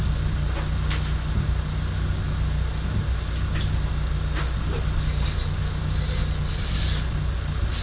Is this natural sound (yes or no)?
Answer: yes